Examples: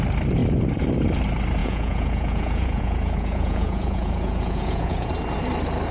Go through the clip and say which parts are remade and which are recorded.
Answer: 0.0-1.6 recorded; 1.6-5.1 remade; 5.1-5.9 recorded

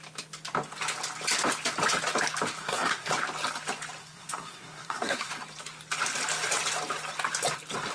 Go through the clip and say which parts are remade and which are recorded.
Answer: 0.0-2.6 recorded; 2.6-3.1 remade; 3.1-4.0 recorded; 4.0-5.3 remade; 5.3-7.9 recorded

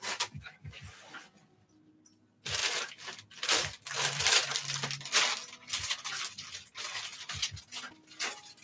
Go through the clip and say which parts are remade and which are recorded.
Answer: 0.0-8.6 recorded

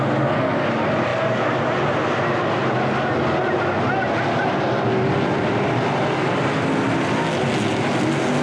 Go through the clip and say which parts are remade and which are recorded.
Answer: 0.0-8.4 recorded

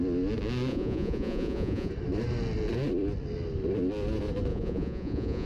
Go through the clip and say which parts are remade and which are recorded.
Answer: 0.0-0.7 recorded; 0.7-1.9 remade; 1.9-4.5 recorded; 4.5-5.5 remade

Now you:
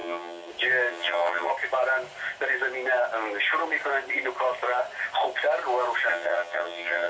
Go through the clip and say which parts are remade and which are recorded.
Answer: 0.0-0.5 remade; 0.5-0.9 recorded; 0.9-1.5 remade; 1.5-6.1 recorded; 6.1-7.1 remade